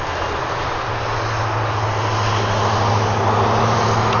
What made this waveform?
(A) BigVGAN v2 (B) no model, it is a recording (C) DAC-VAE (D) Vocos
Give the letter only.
B